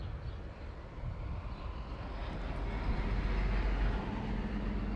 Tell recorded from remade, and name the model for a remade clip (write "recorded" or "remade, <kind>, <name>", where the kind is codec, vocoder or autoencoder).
recorded